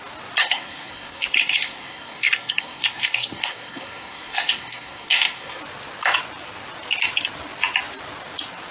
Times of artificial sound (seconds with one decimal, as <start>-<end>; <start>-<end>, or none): 0.4-5.6